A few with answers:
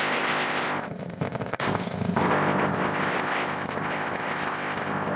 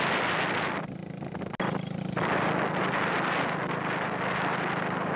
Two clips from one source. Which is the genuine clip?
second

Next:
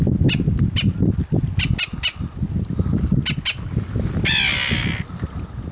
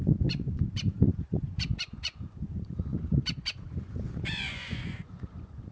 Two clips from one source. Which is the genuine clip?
first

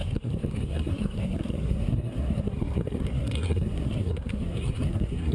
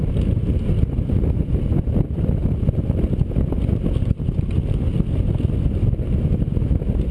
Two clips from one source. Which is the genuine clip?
second